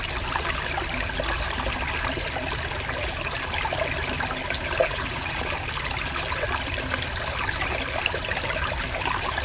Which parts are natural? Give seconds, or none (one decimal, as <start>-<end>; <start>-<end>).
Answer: 0.0-4.8; 5.5-9.4

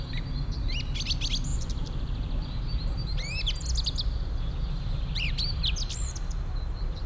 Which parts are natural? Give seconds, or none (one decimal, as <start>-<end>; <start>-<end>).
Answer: 0.0-1.5; 2.6-7.1

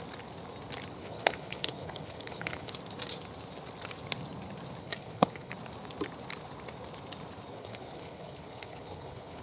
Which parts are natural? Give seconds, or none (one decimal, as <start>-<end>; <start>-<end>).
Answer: 0.0-1.0; 2.7-4.8; 5.5-7.5